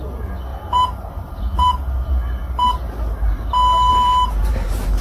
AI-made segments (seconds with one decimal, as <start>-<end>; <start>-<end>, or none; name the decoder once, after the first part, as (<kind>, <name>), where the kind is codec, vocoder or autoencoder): 0.5-3.5 (vocoder, BigVGAN v2); 3.9-5.0